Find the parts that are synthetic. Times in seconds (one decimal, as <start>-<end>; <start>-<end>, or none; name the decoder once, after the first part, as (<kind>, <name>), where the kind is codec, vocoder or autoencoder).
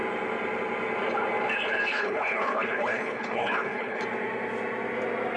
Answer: 1.9-4.0 (codec, HILCodec)